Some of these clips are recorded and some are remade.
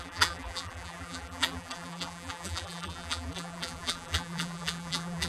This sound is remade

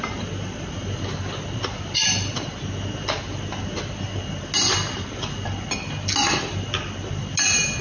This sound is recorded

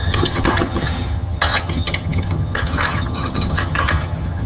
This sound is remade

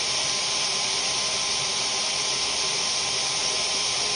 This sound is recorded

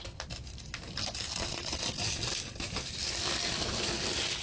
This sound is recorded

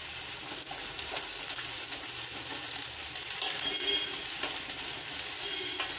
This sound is recorded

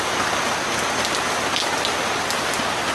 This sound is recorded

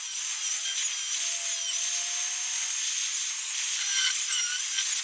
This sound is recorded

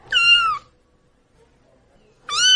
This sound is recorded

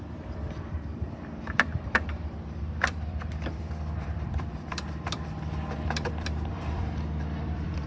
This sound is remade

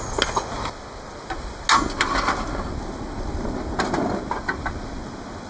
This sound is recorded